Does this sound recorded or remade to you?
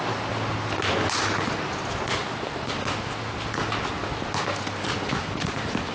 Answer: recorded